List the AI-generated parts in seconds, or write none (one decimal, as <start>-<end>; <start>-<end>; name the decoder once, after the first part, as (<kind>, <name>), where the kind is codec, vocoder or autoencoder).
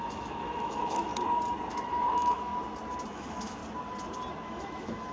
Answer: 0.0-1.1 (autoencoder, DAC-VAE); 1.7-2.5; 3.1-3.6; 4.5-5.1